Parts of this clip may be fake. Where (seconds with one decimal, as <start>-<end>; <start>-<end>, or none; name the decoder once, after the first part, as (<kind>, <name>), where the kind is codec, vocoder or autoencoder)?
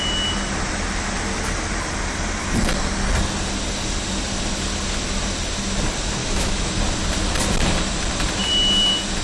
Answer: 6.2-6.7 (autoencoder, DAC-VAE)